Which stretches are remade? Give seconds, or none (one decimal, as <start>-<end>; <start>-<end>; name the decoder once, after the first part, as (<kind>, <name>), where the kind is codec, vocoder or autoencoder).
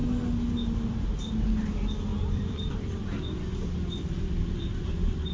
2.1-3.0 (vocoder, BigVGAN v2)